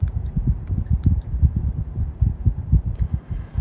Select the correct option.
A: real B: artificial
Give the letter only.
B